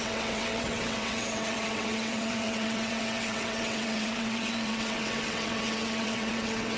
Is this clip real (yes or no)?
no